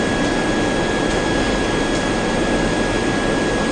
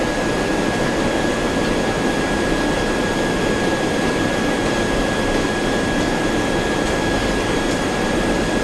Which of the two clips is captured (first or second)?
first